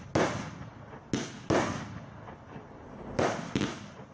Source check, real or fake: real